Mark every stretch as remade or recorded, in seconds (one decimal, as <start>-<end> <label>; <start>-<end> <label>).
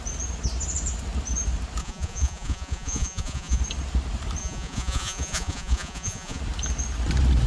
0.0-1.8 recorded; 1.8-3.6 remade; 3.6-4.4 recorded; 4.4-6.4 remade; 6.4-7.5 recorded